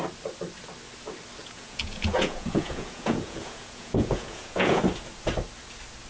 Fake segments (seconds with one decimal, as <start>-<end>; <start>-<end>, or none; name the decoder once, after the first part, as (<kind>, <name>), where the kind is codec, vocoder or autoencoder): 1.4-4.8 (vocoder, Vocos)